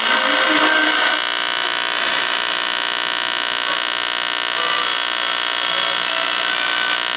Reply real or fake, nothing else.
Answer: real